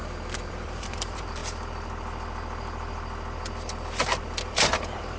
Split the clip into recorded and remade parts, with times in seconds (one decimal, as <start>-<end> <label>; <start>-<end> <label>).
0.0-0.5 recorded; 0.5-1.4 remade; 1.4-4.5 recorded; 4.5-5.2 remade